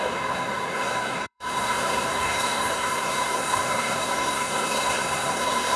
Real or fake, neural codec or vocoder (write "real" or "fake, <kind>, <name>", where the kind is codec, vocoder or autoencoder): fake, codec, SNAC